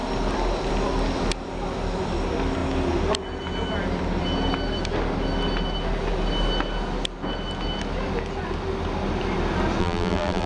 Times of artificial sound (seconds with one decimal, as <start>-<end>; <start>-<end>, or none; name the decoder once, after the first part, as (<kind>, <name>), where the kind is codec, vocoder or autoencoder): 9.8-10.5 (vocoder, BigVGAN v2)